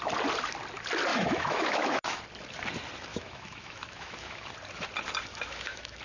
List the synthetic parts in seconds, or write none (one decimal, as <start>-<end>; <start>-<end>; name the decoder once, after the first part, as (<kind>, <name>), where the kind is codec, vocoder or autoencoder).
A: 1.1-2.2 (autoencoder, DAC-VAE); 3.1-4.5; 5.3-6.0